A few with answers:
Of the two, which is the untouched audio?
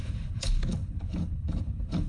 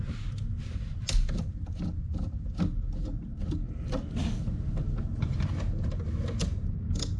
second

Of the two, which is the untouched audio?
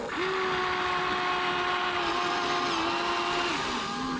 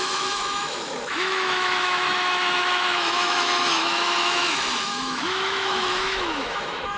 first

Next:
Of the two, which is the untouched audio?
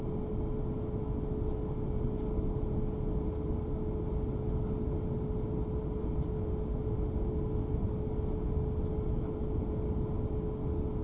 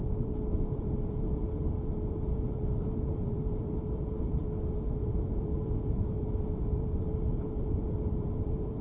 first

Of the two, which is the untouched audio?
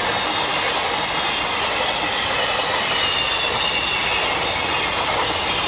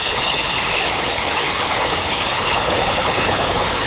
first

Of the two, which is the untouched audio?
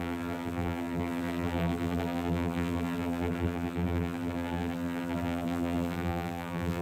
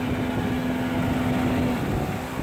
second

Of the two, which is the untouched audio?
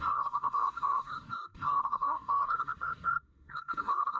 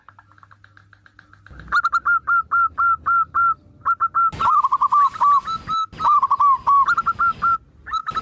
second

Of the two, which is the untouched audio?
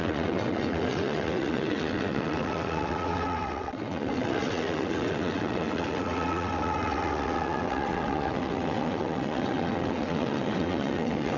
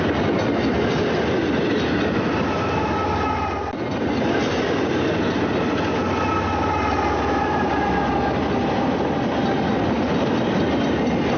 second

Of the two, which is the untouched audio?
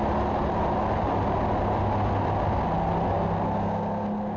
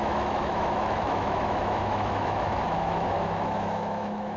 first